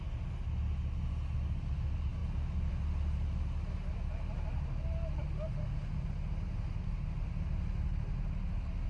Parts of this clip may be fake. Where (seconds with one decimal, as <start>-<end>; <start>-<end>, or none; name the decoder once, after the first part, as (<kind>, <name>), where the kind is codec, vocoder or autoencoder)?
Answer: none